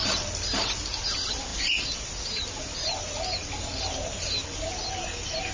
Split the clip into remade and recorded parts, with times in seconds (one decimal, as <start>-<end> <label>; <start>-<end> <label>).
0.0-5.5 recorded